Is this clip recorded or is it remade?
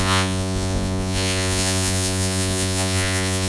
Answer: remade